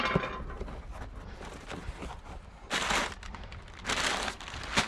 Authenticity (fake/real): real